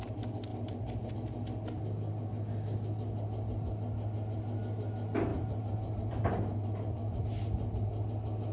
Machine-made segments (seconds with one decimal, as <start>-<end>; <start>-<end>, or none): 0.5-1.1; 5.3-7.2